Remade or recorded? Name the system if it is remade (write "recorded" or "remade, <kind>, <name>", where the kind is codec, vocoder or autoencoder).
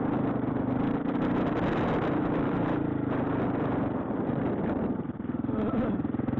recorded